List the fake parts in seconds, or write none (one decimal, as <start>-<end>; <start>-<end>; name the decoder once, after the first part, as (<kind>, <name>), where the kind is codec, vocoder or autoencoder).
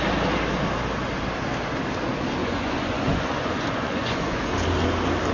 2.4-4.5 (vocoder, Vocos)